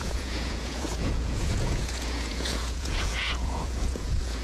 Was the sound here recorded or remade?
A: remade